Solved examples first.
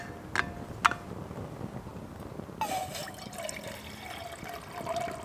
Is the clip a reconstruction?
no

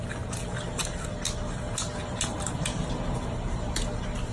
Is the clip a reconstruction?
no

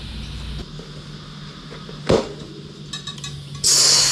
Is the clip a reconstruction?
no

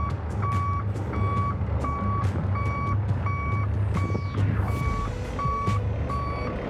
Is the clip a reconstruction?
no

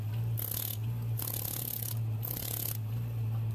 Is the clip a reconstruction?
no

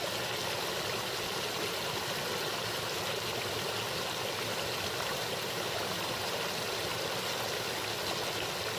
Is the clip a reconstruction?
no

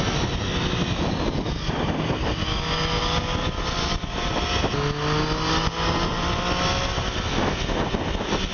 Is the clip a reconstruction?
no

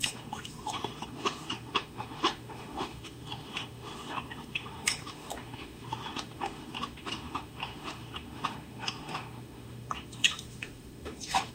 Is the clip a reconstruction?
yes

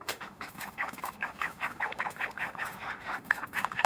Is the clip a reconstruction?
yes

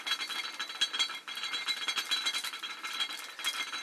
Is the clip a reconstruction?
no